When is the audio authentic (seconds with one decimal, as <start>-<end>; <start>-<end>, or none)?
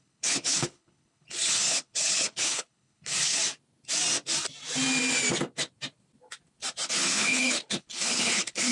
3.4-6.9